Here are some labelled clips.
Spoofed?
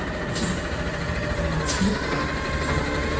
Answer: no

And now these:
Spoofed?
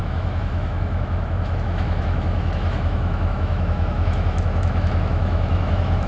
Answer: yes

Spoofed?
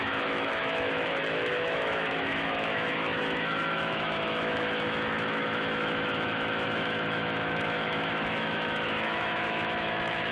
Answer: yes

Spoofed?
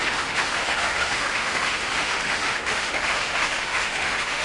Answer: yes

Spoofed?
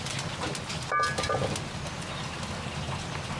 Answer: no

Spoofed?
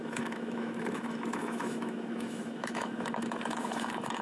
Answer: yes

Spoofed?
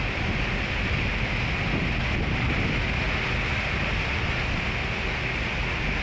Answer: no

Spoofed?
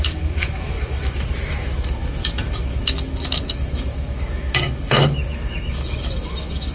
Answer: yes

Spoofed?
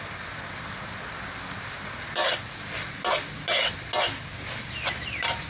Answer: no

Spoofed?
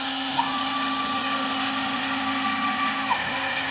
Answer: no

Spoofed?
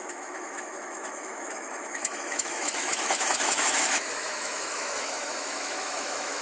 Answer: yes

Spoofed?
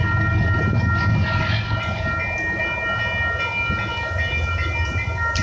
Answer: no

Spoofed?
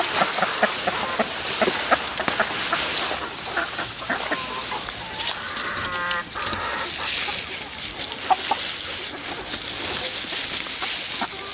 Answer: no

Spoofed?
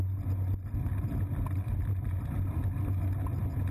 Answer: no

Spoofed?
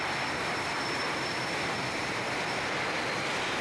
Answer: no